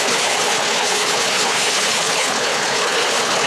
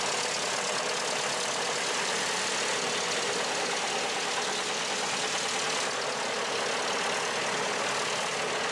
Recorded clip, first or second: second